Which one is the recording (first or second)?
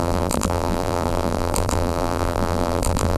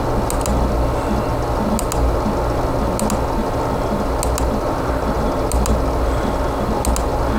second